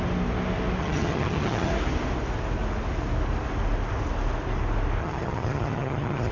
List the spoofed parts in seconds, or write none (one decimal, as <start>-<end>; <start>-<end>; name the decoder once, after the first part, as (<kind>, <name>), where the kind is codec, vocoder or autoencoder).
0.8-1.7 (vocoder, HiFi-GAN); 5.0-6.3